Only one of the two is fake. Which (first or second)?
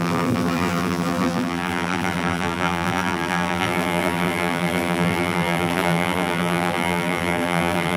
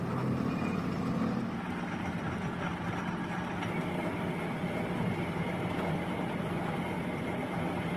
first